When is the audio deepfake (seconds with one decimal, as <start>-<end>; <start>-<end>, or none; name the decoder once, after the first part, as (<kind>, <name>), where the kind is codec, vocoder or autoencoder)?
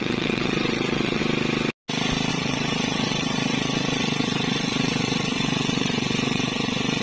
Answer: 0.0-1.2 (vocoder, WaveNeXt); 2.3-7.0